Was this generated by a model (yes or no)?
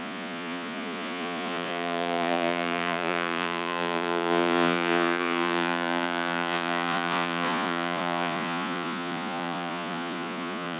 yes